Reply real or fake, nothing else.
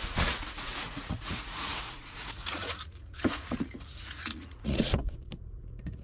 fake